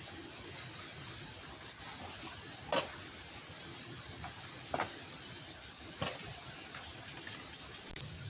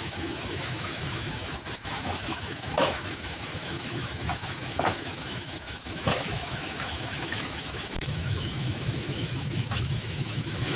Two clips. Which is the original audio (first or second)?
first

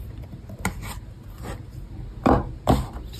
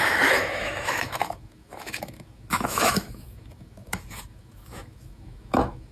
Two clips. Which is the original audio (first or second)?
first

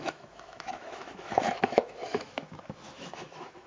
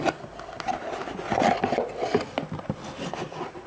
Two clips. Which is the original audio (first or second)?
second